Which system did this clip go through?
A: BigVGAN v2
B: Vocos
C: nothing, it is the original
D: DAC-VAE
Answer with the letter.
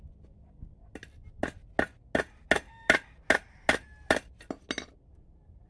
C